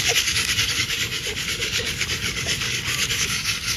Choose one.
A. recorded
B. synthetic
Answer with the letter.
B